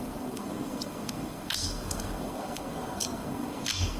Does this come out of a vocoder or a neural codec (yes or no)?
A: yes